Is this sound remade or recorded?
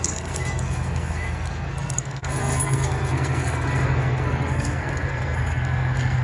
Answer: remade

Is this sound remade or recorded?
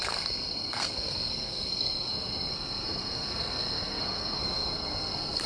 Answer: remade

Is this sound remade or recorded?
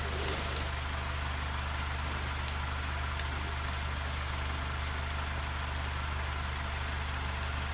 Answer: recorded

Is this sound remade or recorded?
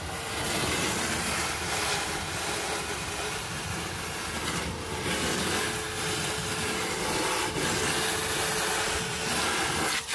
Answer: recorded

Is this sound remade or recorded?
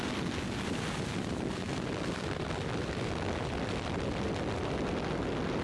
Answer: recorded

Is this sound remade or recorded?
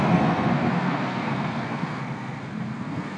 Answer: remade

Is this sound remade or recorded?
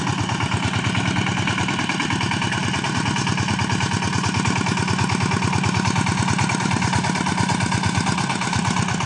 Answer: recorded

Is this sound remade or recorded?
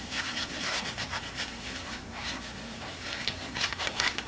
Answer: remade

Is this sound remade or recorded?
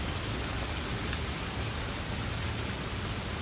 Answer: recorded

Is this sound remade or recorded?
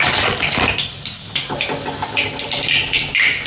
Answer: recorded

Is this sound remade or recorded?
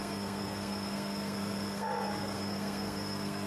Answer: remade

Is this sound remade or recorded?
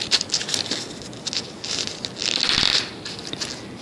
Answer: recorded